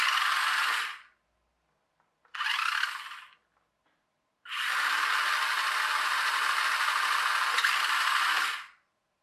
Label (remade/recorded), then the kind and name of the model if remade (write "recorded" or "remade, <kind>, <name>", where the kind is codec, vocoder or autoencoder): recorded